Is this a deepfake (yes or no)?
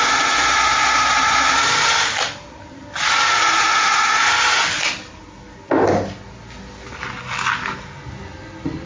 no